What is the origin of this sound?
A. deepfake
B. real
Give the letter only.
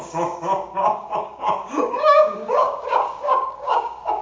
A